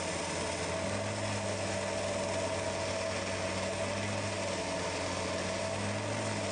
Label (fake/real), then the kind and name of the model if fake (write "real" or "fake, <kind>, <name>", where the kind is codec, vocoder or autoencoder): real